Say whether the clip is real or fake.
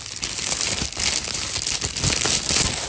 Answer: real